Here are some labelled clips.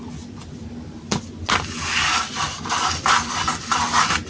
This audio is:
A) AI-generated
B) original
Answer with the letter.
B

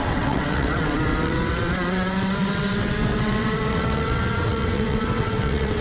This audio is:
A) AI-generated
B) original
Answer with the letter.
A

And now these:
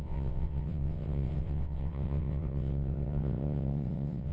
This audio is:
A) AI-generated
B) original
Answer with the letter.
A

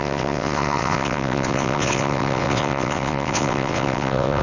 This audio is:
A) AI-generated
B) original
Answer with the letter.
A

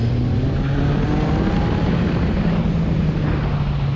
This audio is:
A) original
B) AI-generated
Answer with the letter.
A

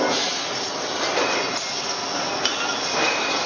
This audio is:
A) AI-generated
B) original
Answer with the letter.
B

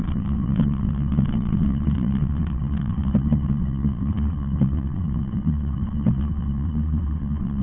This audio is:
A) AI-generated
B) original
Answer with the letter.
A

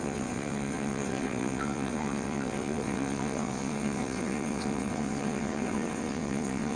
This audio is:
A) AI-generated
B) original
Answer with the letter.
A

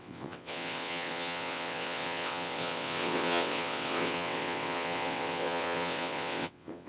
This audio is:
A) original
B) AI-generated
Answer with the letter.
B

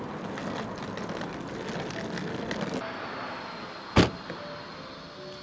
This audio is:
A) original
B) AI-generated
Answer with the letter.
A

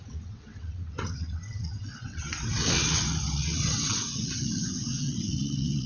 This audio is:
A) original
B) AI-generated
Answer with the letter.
B